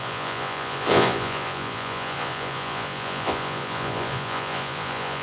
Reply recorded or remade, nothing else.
remade